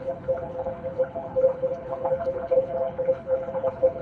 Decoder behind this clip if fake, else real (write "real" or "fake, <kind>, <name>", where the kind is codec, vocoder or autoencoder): fake, codec, HILCodec